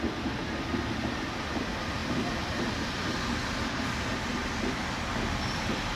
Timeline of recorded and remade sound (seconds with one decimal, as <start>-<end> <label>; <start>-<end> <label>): 0.0-6.0 recorded